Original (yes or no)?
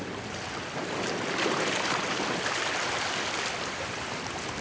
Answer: yes